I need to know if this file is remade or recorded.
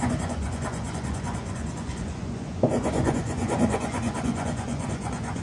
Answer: remade